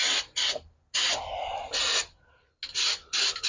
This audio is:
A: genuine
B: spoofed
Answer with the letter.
A